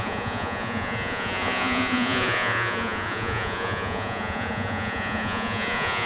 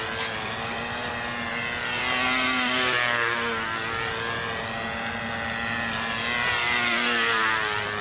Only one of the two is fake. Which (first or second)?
first